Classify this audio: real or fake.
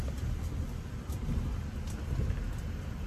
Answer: real